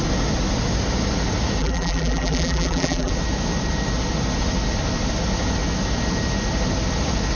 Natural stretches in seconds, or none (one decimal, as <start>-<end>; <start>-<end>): 0.0-1.6; 3.1-7.4